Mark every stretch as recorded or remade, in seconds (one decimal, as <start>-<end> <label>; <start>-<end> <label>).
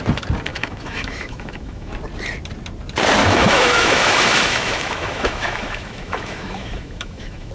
0.0-0.5 recorded; 0.5-1.9 remade; 1.9-3.2 recorded; 3.2-7.5 remade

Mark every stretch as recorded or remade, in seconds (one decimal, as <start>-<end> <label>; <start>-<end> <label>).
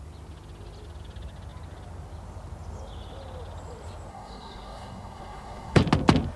0.0-4.1 recorded; 4.1-5.8 remade; 5.8-6.4 recorded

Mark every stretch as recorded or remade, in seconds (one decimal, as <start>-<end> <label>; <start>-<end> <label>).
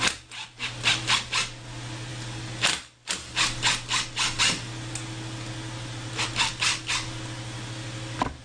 0.0-8.4 recorded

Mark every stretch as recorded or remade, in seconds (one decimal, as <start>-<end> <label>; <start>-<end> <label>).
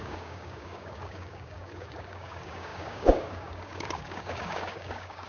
0.0-5.3 remade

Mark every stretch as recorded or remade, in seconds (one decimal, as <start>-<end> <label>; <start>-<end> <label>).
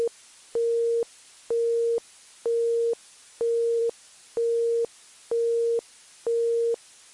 0.0-7.1 recorded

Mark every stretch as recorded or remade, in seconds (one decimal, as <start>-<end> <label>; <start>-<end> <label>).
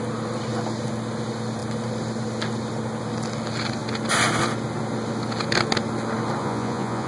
0.0-6.4 recorded; 6.4-7.1 remade